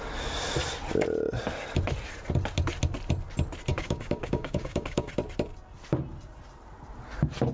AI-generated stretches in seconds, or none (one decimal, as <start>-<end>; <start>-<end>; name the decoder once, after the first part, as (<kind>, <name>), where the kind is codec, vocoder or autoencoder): 3.7-5.1 (codec, DAC)